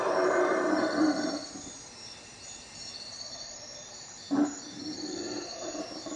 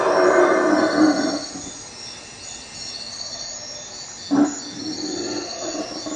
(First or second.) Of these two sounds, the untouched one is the second